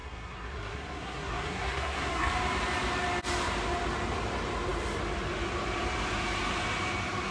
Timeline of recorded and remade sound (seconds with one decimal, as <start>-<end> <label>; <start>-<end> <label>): 0.0-2.3 remade; 2.3-7.3 recorded